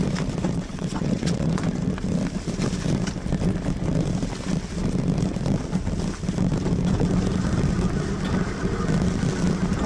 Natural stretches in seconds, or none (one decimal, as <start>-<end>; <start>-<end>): 0.0-0.7; 1.5-9.9